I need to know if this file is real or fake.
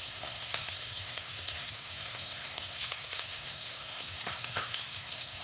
fake